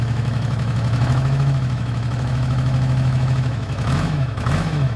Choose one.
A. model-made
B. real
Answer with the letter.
A